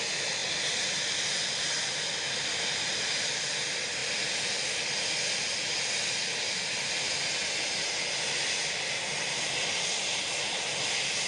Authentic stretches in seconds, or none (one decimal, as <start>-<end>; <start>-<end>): 0.0-11.3